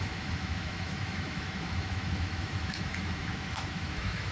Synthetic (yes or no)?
yes